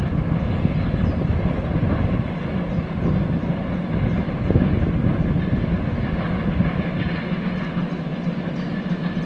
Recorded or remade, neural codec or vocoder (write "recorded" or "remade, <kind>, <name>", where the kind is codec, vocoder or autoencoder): recorded